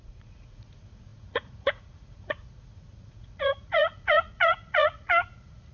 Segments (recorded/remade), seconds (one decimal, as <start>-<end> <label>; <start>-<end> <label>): 0.0-5.7 remade